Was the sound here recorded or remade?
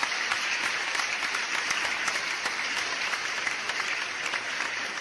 recorded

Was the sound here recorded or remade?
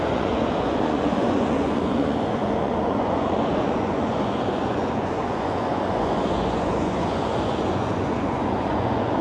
remade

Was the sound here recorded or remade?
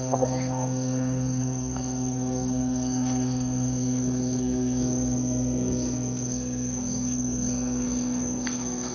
remade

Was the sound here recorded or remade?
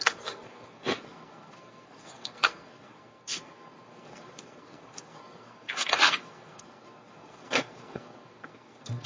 remade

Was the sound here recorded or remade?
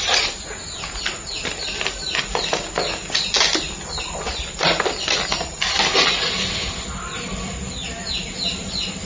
recorded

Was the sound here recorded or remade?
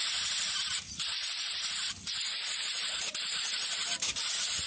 recorded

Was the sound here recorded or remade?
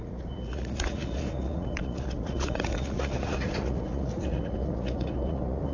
remade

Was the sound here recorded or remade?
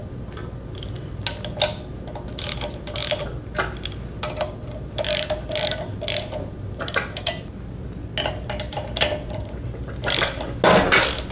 recorded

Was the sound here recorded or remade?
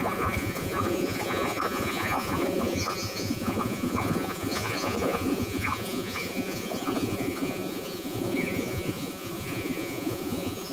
remade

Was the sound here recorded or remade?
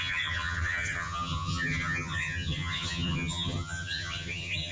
remade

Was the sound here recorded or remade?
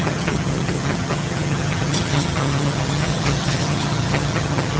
remade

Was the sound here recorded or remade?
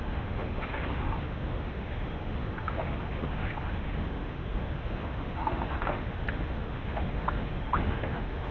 remade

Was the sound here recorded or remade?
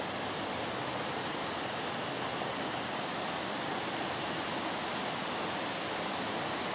recorded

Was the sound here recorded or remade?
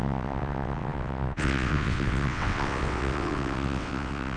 remade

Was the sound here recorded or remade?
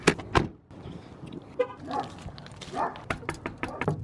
recorded